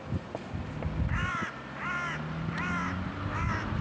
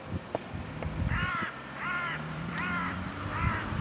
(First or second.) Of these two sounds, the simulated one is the second